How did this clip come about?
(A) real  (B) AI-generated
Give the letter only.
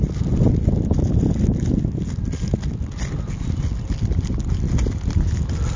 A